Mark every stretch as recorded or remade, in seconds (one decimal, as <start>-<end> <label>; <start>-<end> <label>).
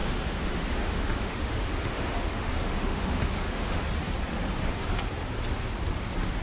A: 0.0-3.8 remade; 3.8-6.4 recorded